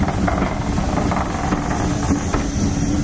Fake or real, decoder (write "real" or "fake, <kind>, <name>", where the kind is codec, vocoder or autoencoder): real